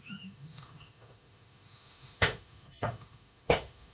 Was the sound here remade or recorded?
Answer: remade